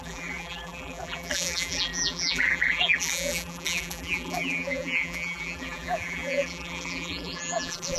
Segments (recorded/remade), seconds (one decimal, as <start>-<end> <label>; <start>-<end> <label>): 0.0-8.0 remade